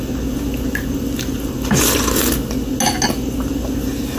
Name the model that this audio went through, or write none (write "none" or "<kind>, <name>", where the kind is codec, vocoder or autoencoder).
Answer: none